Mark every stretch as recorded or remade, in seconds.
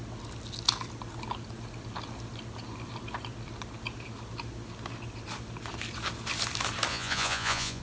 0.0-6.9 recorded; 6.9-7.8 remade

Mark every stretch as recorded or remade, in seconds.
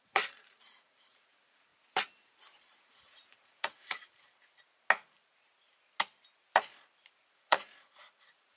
0.0-1.7 remade; 1.7-2.8 recorded; 2.8-4.0 remade; 4.0-7.3 recorded; 7.3-8.6 remade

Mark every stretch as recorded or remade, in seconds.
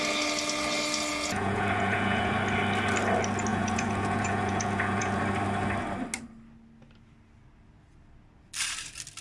0.0-1.1 recorded; 1.1-2.3 remade; 2.3-3.5 recorded; 3.5-5.2 remade; 5.2-9.2 recorded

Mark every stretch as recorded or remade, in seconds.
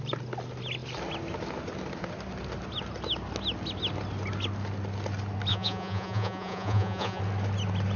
0.0-5.5 recorded; 5.5-7.2 remade; 7.2-8.0 recorded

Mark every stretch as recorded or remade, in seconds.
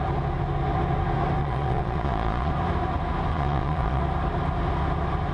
0.0-1.4 recorded; 1.4-2.5 remade; 2.5-3.3 recorded; 3.3-4.0 remade; 4.0-5.3 recorded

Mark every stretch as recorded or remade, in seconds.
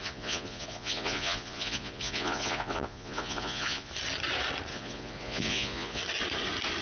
0.0-3.9 remade; 3.9-4.7 recorded; 4.7-6.0 remade; 6.0-6.8 recorded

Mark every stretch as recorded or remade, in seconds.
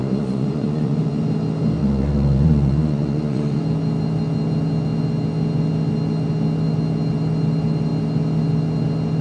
0.0-1.2 remade; 1.2-1.8 recorded; 1.8-3.6 remade; 3.6-9.2 recorded